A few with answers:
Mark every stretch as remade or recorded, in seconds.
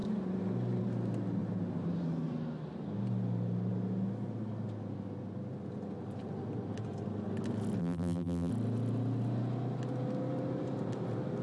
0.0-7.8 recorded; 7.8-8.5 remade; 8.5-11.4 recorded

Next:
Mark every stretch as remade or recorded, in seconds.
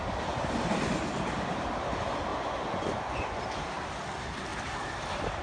0.0-2.3 recorded; 2.3-3.4 remade; 3.4-5.4 recorded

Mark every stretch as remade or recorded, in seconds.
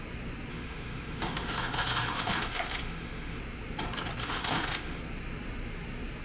0.0-0.5 recorded; 0.5-3.4 remade; 3.4-4.2 recorded; 4.2-5.0 remade; 5.0-6.2 recorded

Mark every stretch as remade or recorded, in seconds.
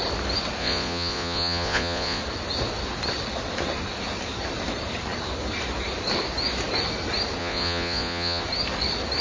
0.0-0.6 recorded; 0.6-2.2 remade; 2.2-7.4 recorded; 7.4-8.4 remade; 8.4-9.2 recorded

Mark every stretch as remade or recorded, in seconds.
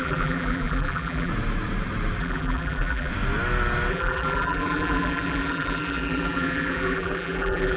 0.0-1.3 remade; 1.3-2.2 recorded; 2.2-3.1 remade; 3.1-3.9 recorded; 3.9-7.8 remade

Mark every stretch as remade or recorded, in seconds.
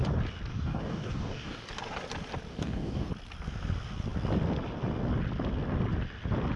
0.0-0.5 recorded; 0.5-1.6 remade; 1.6-2.5 recorded; 2.5-3.1 remade; 3.1-6.6 recorded